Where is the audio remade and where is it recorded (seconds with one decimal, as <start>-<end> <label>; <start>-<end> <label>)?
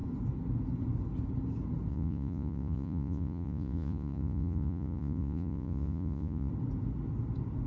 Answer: 0.0-1.9 recorded; 1.9-6.5 remade; 6.5-7.7 recorded